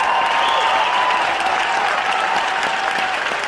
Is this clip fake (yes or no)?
no